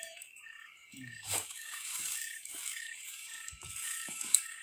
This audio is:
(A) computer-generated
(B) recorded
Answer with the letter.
A